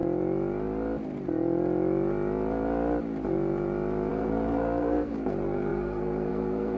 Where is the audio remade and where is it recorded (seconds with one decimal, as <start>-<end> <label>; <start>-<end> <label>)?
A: 0.0-4.1 recorded; 4.1-6.8 remade